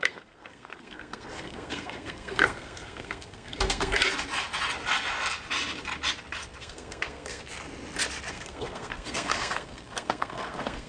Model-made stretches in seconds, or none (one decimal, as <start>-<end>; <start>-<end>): 0.0-4.0; 6.6-7.5; 8.3-10.9